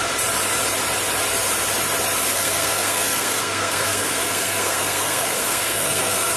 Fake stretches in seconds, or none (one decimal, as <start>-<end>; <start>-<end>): 2.3-6.4